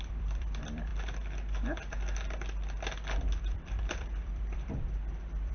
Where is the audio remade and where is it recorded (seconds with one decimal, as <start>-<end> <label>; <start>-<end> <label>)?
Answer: 0.0-0.9 remade; 0.9-3.4 recorded; 3.4-5.5 remade

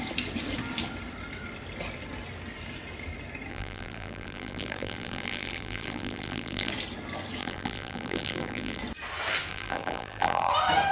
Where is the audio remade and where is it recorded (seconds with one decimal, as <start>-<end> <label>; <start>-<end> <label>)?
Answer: 0.0-3.5 recorded; 3.5-6.7 remade; 6.7-7.4 recorded; 7.4-8.8 remade; 8.8-9.5 recorded; 9.5-10.5 remade; 10.5-10.9 recorded

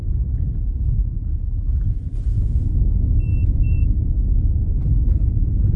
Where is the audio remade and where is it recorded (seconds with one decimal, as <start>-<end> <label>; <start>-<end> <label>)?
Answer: 0.0-1.7 recorded; 1.7-2.9 remade; 2.9-3.3 recorded; 3.3-4.2 remade; 4.2-4.7 recorded; 4.7-5.8 remade

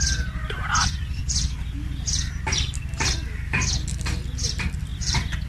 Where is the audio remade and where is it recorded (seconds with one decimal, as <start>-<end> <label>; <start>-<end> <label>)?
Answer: 0.0-5.5 recorded

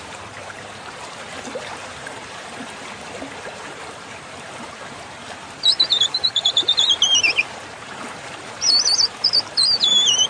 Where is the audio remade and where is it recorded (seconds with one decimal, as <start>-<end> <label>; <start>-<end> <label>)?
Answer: 0.0-10.3 remade